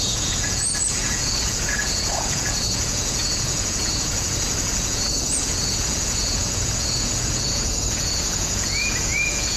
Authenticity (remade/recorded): remade